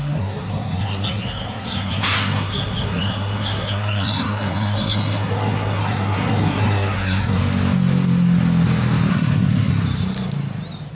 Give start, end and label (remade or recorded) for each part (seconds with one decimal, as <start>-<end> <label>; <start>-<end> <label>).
0.0-7.4 remade; 7.4-9.1 recorded; 9.1-9.7 remade; 9.7-10.9 recorded